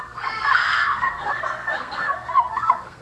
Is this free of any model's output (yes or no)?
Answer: no